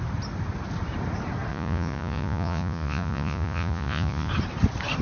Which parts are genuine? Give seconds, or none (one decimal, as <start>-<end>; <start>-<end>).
0.0-1.5; 4.3-5.0